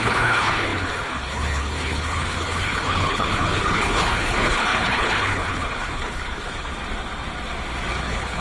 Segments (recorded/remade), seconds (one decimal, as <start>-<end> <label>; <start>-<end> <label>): 0.0-6.7 remade; 6.7-7.9 recorded; 7.9-8.4 remade